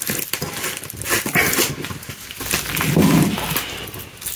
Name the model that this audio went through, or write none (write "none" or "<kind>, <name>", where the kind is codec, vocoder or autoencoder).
none